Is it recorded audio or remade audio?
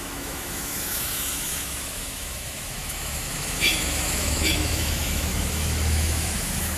remade